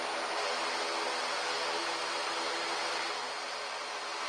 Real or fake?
real